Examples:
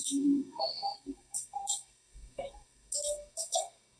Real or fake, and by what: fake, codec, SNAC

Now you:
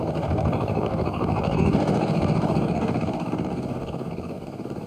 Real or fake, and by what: fake, codec, DAC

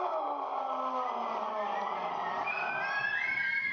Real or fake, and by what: real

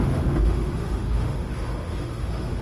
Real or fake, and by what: fake, autoencoder, DAC-VAE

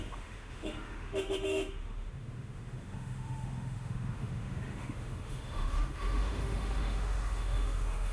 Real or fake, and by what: fake, autoencoder, DAC-VAE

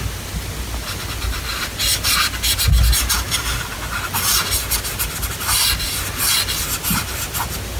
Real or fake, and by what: real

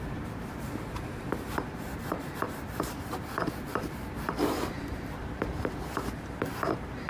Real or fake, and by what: fake, vocoder, BigVGAN v2